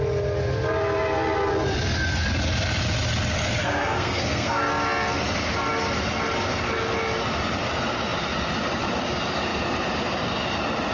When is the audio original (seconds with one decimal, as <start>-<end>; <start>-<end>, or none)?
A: 0.0-3.6; 4.7-10.9